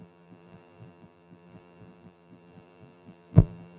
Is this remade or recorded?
remade